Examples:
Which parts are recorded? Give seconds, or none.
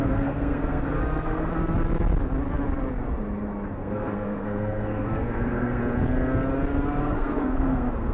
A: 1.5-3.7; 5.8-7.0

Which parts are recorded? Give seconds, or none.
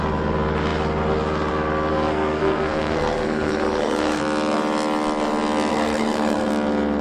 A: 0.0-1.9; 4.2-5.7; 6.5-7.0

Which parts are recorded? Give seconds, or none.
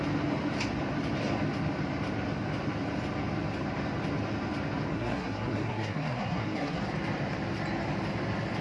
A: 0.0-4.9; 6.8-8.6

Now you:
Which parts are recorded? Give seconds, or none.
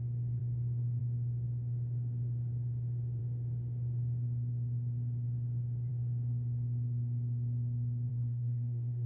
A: 0.0-8.1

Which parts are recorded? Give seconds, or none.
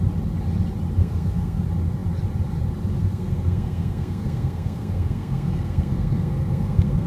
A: 0.0-1.0; 1.6-3.0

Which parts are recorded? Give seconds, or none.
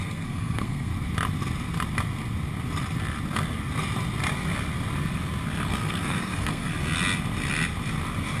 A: 0.9-5.7; 6.7-8.4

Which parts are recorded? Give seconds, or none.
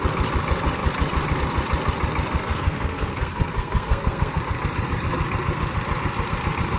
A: 0.0-2.3; 4.4-6.8